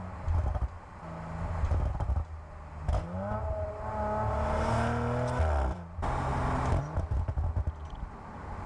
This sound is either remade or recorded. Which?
recorded